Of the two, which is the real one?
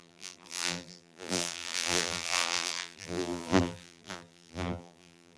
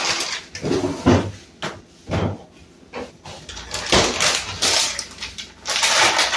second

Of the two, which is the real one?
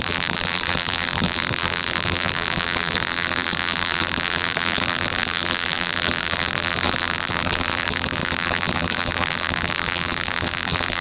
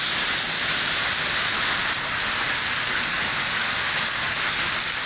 second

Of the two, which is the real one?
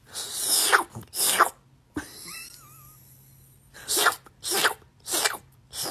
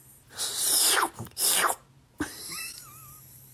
first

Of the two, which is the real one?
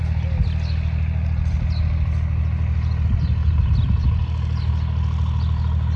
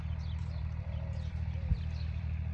first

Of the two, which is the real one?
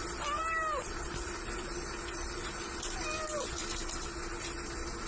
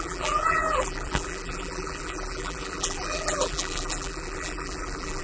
first